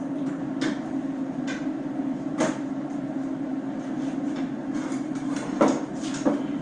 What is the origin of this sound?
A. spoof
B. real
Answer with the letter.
B